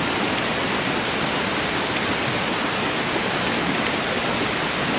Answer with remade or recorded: recorded